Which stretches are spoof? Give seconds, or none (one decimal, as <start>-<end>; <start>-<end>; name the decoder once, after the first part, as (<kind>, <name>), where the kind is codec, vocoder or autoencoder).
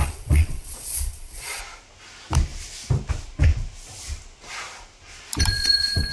0.0-1.6 (vocoder, Vocos); 5.5-6.1